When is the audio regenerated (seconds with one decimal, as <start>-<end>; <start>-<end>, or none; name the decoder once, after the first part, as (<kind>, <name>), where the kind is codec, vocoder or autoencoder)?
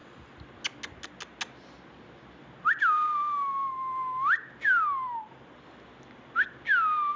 none